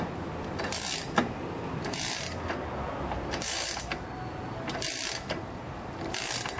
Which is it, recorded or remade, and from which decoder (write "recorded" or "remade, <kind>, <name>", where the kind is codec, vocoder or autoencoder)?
recorded